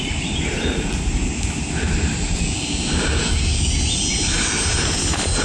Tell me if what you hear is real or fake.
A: real